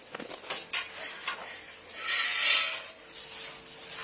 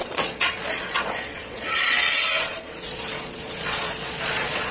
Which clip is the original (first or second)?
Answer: first